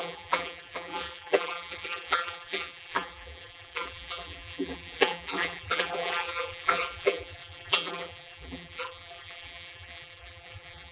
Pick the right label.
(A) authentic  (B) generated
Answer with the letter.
B